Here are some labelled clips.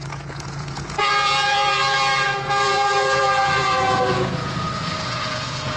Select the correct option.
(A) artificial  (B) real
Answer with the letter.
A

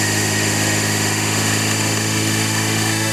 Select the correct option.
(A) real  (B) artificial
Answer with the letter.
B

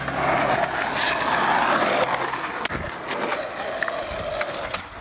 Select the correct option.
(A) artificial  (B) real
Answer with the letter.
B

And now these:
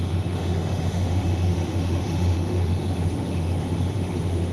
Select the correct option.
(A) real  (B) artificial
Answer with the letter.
B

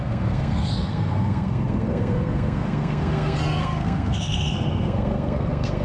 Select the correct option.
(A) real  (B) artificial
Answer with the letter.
B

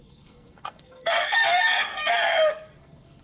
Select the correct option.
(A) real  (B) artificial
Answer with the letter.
B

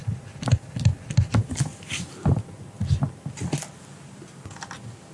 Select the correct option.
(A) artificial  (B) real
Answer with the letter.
B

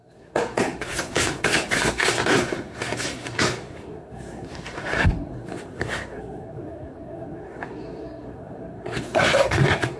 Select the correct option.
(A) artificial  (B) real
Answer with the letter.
A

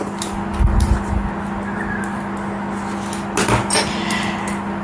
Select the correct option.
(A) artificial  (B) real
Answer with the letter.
B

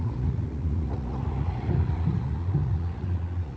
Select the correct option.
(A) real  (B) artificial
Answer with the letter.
B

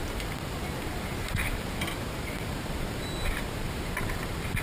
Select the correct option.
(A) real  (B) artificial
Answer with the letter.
B